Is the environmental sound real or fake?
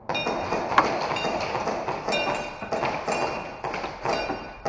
real